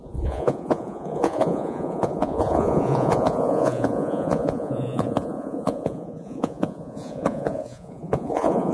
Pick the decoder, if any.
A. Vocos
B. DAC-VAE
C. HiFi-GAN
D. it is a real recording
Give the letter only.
A